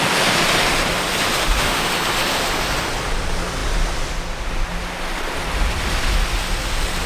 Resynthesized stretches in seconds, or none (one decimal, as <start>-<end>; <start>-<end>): 1.4-1.9